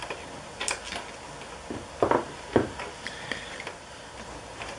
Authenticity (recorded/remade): recorded